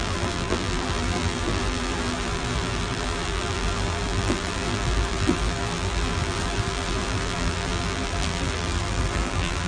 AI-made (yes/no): yes